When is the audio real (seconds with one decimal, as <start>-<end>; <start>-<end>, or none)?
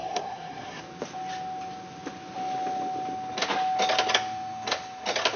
0.8-5.4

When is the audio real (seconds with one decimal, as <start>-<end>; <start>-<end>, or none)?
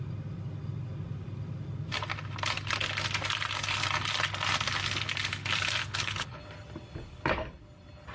0.0-5.8; 6.4-8.1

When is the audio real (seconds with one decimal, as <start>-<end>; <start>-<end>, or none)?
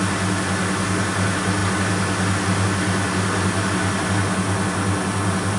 0.0-5.6